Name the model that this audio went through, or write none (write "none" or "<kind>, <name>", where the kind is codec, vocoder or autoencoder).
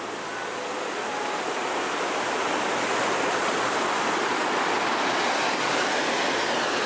none